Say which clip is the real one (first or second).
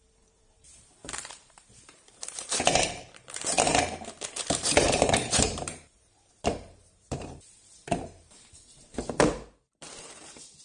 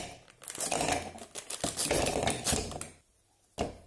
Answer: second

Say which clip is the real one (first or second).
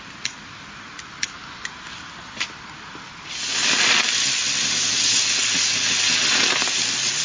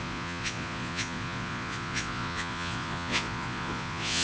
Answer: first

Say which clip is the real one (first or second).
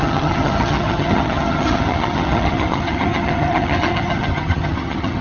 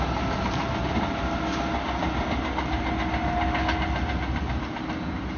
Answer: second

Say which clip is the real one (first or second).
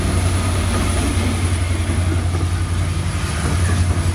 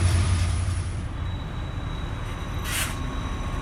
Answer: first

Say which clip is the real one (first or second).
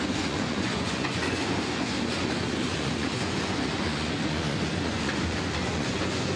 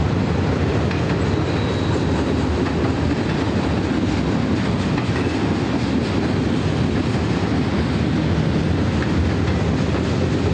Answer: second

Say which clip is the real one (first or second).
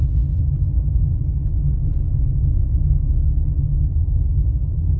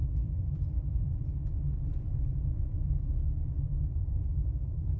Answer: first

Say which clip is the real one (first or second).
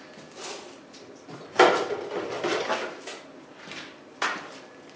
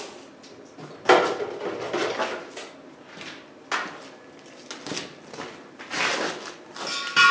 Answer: second